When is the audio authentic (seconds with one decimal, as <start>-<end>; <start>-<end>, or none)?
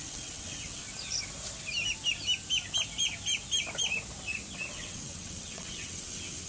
0.8-4.7